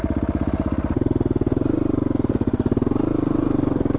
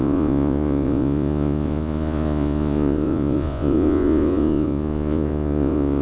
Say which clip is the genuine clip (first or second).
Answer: first